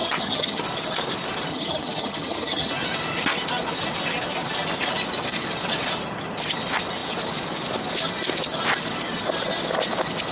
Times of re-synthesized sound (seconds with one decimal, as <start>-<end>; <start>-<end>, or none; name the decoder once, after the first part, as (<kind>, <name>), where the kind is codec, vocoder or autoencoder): 0.0-0.6 (vocoder, HiFi-GAN); 1.5-2.7